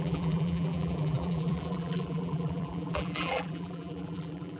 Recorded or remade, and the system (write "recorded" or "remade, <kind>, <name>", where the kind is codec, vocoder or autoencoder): remade, vocoder, BigVGAN v2